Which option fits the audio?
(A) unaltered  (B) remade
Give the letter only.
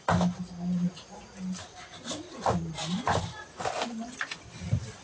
A